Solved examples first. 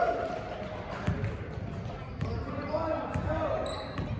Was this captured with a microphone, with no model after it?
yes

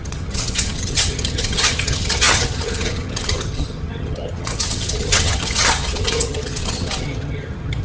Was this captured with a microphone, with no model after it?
no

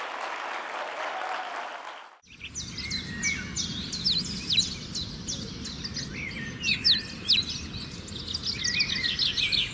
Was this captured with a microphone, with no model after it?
yes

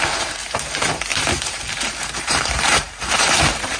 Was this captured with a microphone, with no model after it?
no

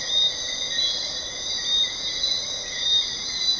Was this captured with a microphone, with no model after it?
yes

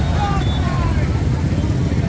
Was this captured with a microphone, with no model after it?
yes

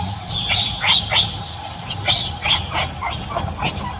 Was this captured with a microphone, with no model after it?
yes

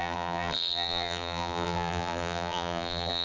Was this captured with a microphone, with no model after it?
no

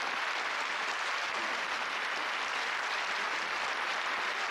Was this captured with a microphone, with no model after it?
yes